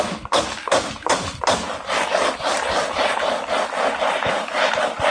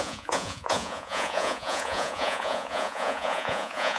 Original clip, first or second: first